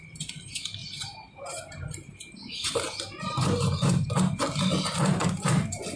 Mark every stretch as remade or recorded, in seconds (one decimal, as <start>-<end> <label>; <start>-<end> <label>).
0.0-6.0 remade